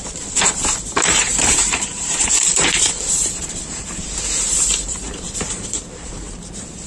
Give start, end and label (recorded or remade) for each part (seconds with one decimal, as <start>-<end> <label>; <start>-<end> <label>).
0.0-6.9 remade